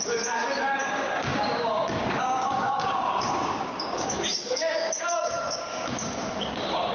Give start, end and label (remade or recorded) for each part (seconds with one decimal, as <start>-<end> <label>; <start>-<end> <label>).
0.0-6.9 remade

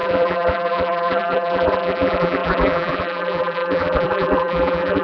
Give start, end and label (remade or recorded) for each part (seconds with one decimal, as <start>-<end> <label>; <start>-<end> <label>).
0.0-5.0 remade